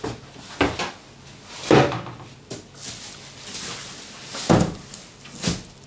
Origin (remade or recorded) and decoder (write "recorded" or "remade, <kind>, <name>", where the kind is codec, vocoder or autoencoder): recorded